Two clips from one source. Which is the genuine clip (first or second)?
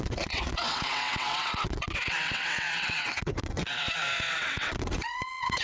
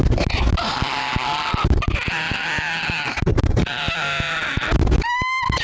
second